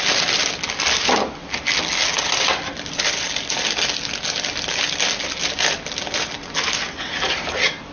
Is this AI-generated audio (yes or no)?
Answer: no